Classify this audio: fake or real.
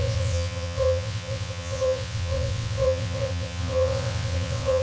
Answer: fake